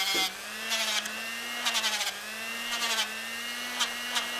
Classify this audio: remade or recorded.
recorded